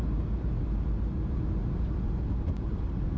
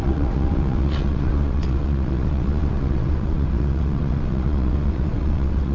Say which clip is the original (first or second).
first